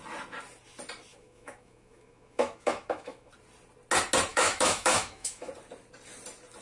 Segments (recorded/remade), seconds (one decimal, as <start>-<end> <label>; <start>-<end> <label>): 0.0-1.1 recorded; 1.1-3.3 remade; 3.3-4.3 recorded; 4.3-5.5 remade; 5.5-6.6 recorded